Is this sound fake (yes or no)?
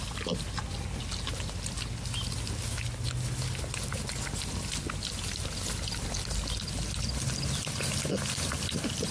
no